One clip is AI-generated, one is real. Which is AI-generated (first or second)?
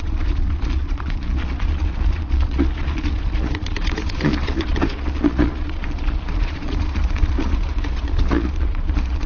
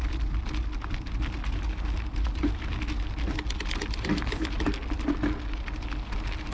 first